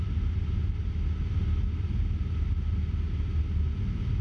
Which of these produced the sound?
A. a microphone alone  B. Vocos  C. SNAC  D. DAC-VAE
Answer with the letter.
A